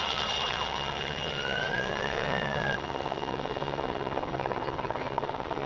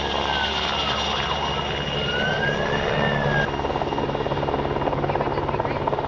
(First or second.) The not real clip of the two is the first